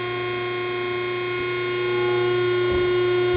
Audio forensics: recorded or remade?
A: recorded